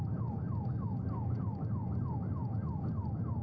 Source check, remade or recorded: recorded